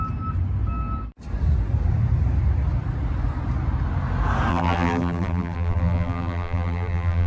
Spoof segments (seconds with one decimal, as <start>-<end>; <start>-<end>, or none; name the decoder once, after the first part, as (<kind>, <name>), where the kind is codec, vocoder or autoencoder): 4.5-7.3 (vocoder, BigVGAN v2)